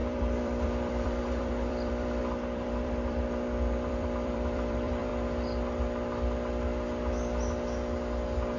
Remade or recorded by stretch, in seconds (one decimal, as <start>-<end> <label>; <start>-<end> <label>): 0.0-5.1 remade; 5.1-8.6 recorded

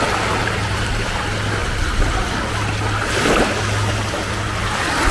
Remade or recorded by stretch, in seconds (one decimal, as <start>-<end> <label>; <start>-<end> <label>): 0.0-0.4 recorded; 0.4-1.2 remade; 1.2-5.1 recorded